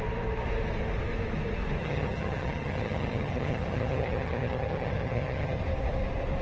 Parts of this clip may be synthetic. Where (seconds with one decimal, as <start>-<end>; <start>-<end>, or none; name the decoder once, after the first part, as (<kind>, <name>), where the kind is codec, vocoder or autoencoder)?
1.8-5.6 (vocoder, HiFi-GAN)